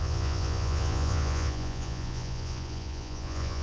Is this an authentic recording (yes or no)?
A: no